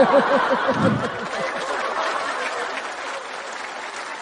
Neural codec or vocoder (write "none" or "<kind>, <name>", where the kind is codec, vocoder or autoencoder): none